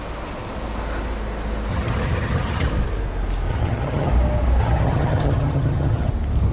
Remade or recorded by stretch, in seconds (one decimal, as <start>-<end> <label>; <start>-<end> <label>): 0.0-1.7 recorded; 1.7-2.7 remade; 2.7-3.5 recorded; 3.5-4.1 remade; 4.1-4.6 recorded; 4.6-6.1 remade; 6.1-6.5 recorded